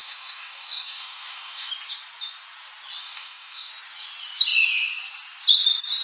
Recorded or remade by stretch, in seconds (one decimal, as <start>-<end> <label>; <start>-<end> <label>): 0.0-1.7 remade; 1.7-3.0 recorded; 3.0-3.7 remade; 3.7-6.0 recorded